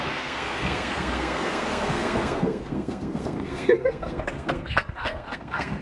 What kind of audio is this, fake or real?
fake